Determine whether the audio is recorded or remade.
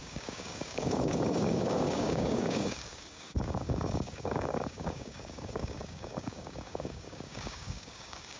remade